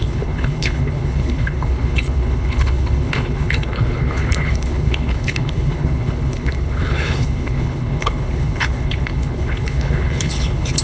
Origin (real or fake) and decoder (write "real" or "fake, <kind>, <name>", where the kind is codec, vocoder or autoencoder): fake, codec, HILCodec